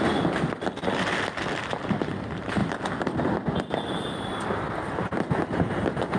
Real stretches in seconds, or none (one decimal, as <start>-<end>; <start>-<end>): 0.0-6.2